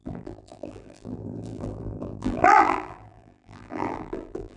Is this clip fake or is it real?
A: fake